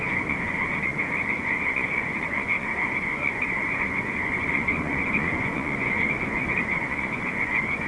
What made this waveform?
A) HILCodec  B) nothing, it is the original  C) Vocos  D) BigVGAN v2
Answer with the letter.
C